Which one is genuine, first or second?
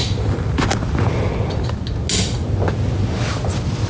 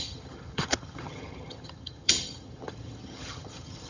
first